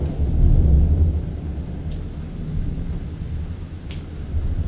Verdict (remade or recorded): recorded